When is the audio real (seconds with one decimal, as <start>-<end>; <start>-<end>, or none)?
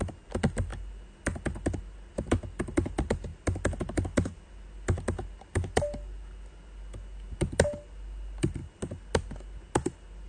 0.0-10.3